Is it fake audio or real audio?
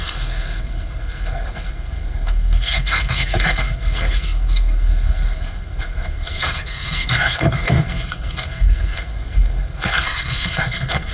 fake